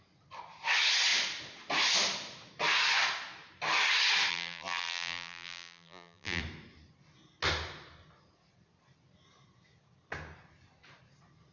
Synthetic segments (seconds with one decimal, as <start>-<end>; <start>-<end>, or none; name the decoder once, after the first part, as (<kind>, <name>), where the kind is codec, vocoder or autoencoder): 4.3-6.4 (vocoder, BigVGAN v2)